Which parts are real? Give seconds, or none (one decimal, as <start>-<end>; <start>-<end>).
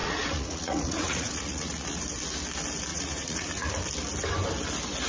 2.0-2.9; 3.7-5.1